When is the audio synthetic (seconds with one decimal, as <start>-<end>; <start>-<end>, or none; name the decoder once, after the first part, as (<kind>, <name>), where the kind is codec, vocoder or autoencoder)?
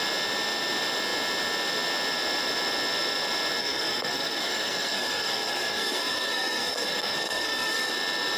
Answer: 3.6-7.9 (codec, SNAC)